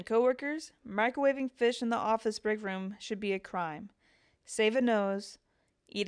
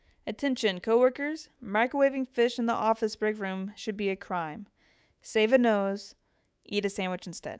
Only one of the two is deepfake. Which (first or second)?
second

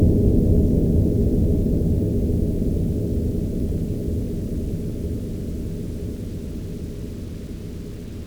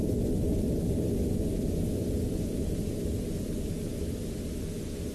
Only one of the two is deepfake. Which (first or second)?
second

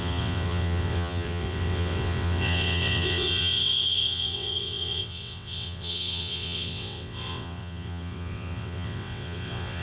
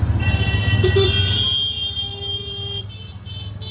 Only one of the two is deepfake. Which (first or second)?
first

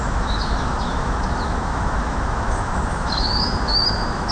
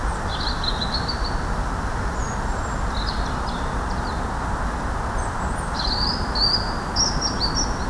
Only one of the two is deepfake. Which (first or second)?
first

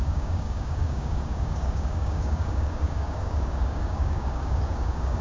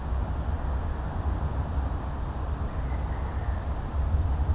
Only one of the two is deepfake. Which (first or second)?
first